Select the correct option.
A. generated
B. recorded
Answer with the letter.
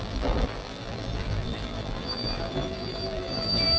A